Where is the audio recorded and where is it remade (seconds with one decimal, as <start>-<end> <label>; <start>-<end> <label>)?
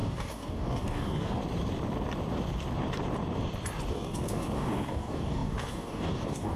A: 0.0-1.4 remade; 1.4-3.9 recorded; 3.9-6.6 remade